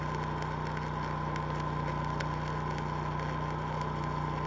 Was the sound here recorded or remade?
recorded